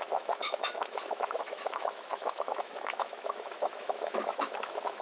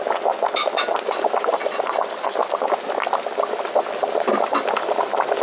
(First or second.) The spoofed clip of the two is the first